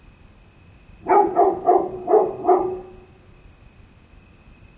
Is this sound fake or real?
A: real